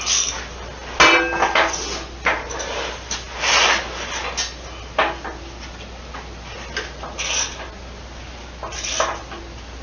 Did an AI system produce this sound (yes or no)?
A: no